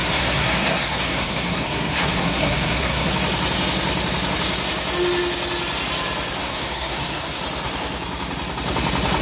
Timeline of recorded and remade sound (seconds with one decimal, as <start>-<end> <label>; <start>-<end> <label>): 0.0-3.1 remade; 3.1-6.4 recorded; 6.4-7.4 remade; 7.4-9.2 recorded